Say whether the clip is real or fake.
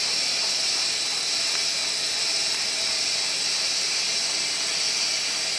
real